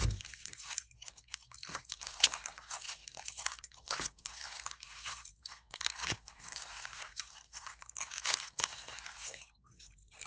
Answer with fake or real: fake